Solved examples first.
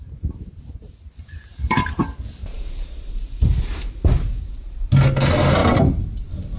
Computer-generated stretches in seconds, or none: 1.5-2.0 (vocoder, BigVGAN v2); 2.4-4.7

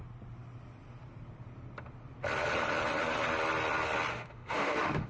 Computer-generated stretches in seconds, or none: 4.1-5.1 (autoencoder, DAC-VAE)

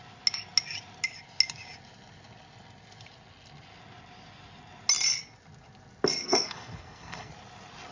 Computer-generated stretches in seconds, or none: 6.2-7.3 (codec, SNAC)

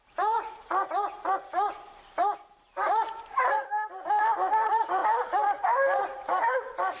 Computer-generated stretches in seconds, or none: 0.0-5.0 (vocoder, BigVGAN v2); 6.0-7.0